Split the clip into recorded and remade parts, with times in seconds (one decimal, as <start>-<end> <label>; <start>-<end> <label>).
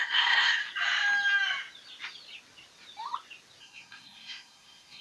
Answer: 0.0-0.6 remade; 0.6-3.6 recorded; 3.6-5.0 remade